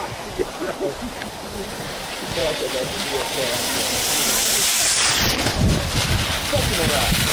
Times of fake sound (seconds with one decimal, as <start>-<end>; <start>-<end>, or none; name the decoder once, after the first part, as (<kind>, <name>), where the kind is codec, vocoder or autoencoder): 2.4-4.8 (vocoder, BigVGAN v2)